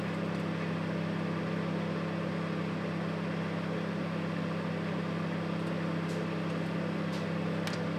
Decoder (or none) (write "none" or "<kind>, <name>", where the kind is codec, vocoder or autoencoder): none